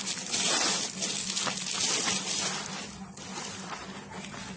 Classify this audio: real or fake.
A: real